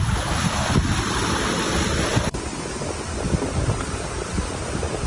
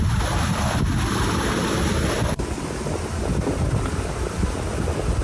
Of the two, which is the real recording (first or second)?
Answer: second